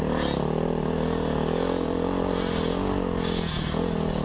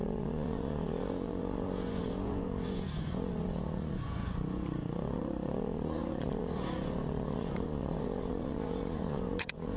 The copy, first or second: second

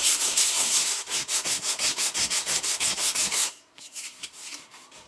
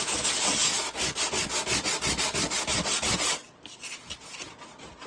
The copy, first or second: first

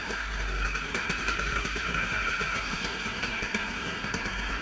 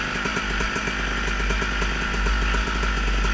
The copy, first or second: first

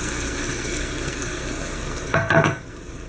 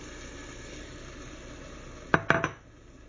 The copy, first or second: first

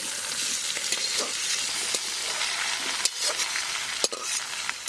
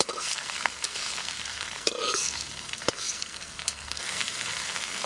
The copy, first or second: second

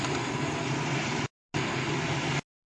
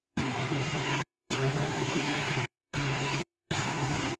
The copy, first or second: second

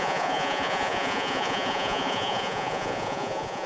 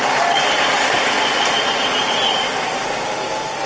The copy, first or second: first